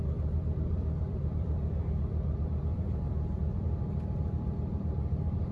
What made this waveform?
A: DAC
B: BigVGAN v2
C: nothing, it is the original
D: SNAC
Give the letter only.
B